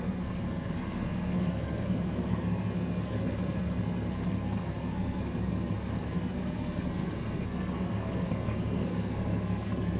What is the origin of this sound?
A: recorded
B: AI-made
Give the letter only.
B